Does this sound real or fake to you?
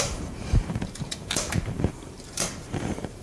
fake